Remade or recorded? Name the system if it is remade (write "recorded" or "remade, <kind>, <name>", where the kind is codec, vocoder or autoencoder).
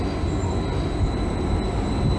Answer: recorded